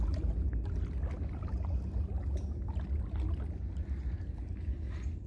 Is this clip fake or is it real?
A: real